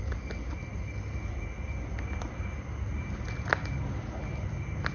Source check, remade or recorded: recorded